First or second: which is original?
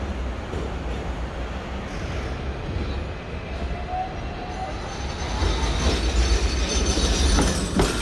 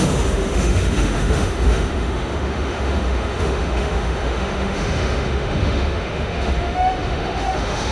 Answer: first